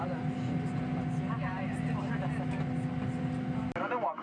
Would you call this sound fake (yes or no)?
no